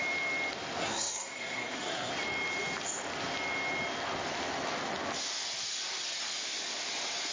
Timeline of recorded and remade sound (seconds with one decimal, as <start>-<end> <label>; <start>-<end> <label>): 0.0-0.8 recorded; 0.8-2.1 remade; 2.1-7.3 recorded